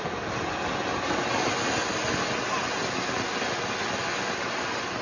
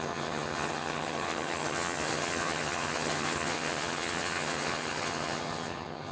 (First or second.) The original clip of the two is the first